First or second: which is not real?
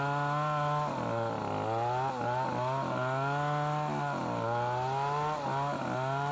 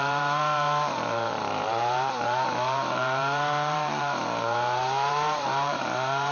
second